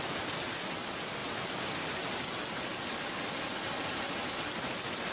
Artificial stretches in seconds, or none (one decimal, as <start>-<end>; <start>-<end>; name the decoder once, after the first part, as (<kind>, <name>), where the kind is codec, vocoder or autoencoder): none